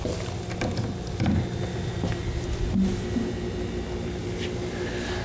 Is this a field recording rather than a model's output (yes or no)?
yes